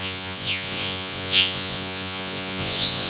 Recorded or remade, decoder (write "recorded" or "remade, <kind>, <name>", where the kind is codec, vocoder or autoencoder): remade, vocoder, Vocos